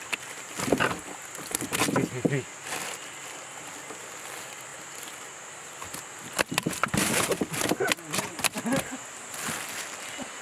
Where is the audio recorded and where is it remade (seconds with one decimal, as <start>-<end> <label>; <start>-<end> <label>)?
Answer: 0.0-10.4 recorded